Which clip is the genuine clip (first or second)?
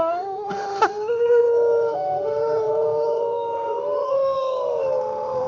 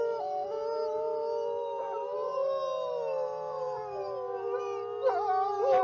second